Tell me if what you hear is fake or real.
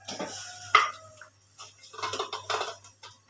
real